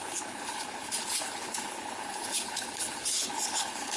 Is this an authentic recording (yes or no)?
no